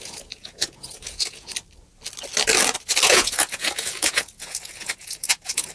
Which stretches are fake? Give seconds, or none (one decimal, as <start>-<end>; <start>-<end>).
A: 0.0-1.5; 3.1-5.7